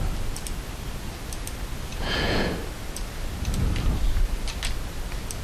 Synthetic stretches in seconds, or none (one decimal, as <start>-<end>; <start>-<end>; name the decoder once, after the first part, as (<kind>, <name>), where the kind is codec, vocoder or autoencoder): 1.9-2.5 (vocoder, Vocos)